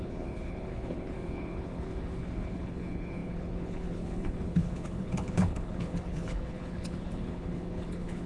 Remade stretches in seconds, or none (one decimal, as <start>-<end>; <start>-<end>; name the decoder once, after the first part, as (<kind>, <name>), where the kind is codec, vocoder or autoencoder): 0.0-8.3 (codec, HILCodec)